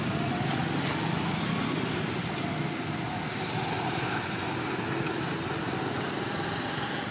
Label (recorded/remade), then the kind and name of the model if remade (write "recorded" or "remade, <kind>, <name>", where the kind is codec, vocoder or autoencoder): recorded